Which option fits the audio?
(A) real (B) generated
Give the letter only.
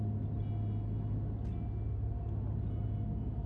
A